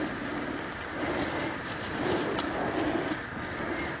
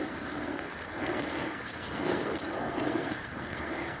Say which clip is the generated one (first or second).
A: second